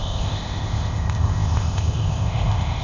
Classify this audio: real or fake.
fake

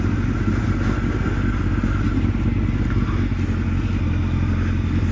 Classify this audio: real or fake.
real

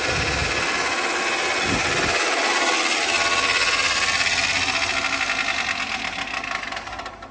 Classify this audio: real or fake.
real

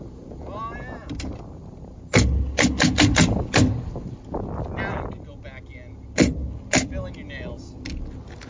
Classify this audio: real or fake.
real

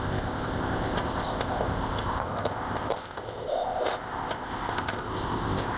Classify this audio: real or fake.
fake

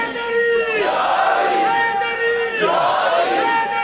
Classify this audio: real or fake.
real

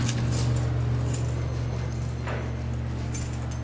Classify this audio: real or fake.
real